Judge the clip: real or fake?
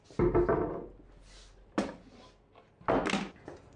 real